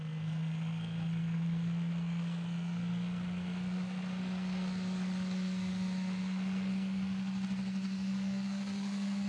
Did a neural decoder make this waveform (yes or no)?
yes